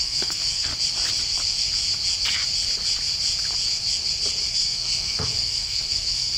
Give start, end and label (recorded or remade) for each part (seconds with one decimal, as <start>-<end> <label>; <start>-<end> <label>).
0.0-0.7 remade; 0.7-4.5 recorded; 4.5-6.4 remade